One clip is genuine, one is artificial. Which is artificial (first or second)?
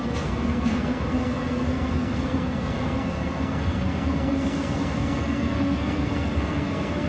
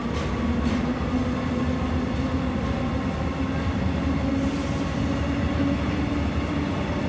first